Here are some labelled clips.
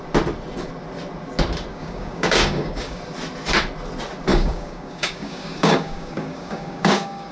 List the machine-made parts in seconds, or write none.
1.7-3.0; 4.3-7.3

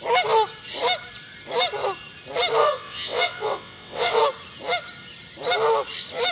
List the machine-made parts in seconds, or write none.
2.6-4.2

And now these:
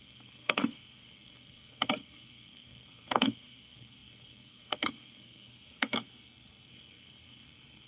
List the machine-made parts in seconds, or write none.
0.0-7.9

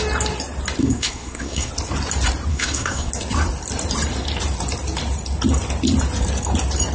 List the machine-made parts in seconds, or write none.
0.8-1.7; 2.5-3.1

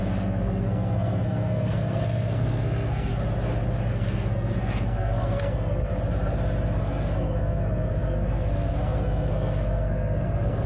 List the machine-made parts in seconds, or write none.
0.0-3.1; 3.9-5.9; 6.8-10.7